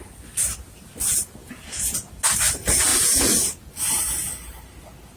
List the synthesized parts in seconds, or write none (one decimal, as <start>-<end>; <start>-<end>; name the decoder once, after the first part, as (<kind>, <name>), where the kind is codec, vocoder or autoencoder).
1.4-2.1 (vocoder, Vocos); 2.9-3.4